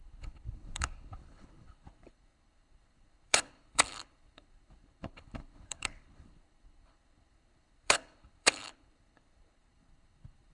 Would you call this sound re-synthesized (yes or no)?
yes